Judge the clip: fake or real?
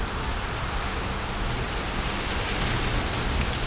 real